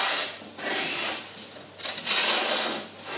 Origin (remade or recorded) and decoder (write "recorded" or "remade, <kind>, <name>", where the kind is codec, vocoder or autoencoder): recorded